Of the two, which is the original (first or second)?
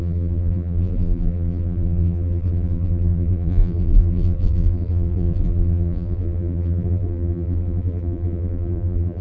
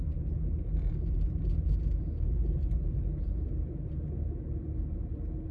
second